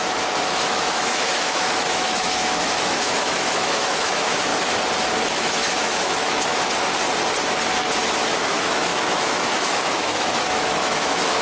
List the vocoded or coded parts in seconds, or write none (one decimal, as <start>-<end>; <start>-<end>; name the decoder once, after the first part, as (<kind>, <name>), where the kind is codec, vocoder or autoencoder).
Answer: 0.0-4.5 (autoencoder, DAC-VAE); 5.3-6.5; 8.5-11.4